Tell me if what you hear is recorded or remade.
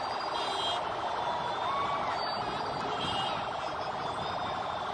recorded